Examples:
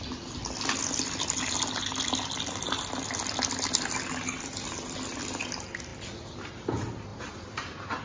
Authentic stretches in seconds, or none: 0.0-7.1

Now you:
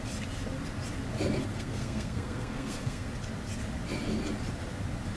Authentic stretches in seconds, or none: 0.0-1.5; 3.1-5.2

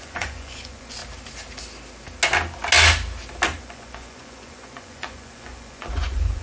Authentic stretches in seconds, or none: 1.0-3.6

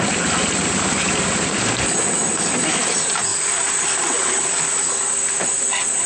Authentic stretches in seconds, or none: 0.0-3.3; 4.1-6.1

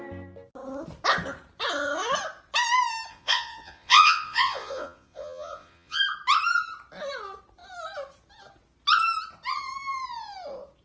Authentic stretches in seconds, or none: 0.0-3.1; 6.0-10.8